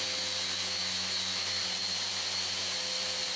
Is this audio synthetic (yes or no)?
yes